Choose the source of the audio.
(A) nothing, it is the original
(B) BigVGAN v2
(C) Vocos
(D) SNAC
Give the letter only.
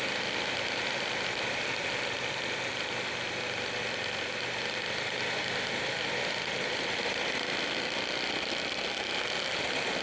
A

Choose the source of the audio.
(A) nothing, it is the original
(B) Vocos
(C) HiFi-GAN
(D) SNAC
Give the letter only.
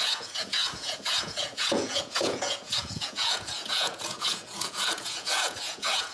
B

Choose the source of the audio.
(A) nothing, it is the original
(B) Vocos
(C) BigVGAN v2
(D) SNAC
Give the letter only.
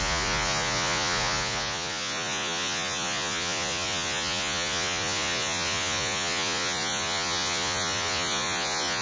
B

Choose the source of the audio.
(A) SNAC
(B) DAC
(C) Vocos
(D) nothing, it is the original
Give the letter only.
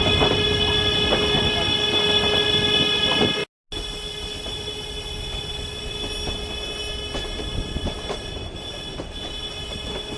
D